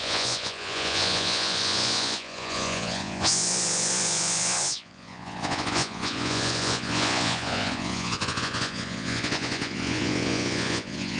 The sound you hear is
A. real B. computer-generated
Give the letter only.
B